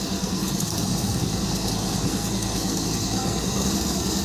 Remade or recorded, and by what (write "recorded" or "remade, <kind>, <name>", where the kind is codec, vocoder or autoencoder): remade, codec, SNAC